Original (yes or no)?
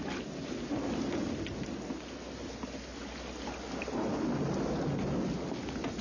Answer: yes